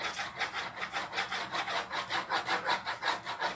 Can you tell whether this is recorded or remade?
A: recorded